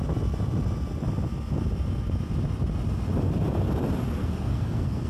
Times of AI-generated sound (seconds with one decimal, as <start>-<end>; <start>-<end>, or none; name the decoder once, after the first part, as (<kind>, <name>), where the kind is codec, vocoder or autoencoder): 4.2-5.1 (codec, SNAC)